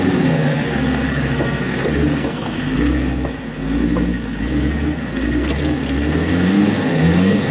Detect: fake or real fake